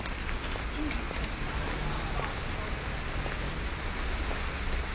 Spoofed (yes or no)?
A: no